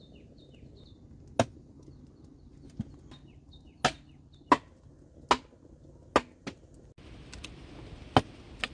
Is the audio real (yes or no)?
yes